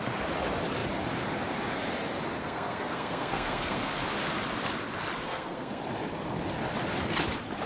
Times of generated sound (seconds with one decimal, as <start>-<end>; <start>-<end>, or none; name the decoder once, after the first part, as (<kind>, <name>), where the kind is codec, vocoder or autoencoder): 2.4-3.9 (codec, SNAC); 5.2-5.8